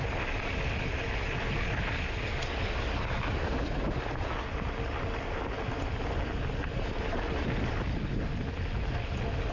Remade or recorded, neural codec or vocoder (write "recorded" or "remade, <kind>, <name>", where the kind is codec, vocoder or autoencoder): recorded